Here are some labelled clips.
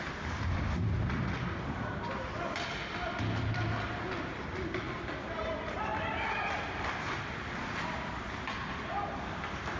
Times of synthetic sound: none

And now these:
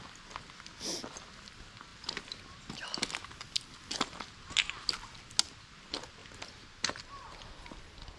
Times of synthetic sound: none

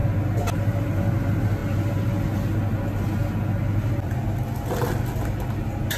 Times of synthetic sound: none

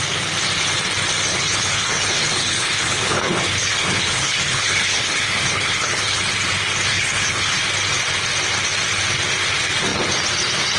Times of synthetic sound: 1.3-6.2 (codec, HILCodec); 6.9-7.6